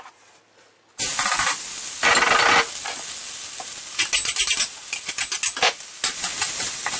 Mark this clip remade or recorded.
recorded